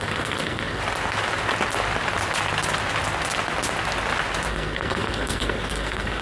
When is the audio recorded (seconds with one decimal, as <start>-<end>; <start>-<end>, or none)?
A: 0.8-4.5